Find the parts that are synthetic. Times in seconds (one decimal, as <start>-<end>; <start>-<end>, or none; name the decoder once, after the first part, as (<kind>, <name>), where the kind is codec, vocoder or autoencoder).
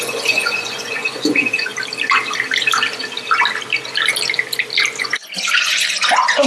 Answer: 0.0-1.7 (vocoder, Vocos); 5.0-6.5